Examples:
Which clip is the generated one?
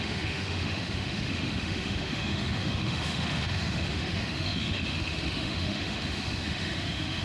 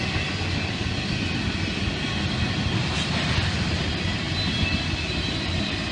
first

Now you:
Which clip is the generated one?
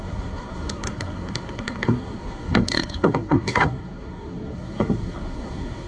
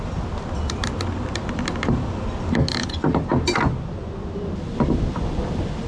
first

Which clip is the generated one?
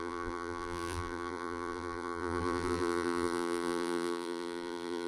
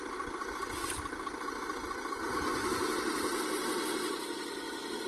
first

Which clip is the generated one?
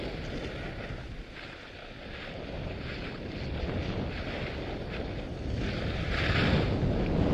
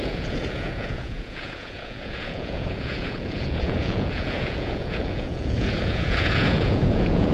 second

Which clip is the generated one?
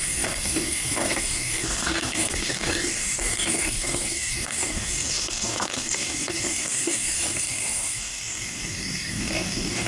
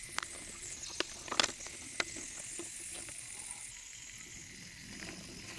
first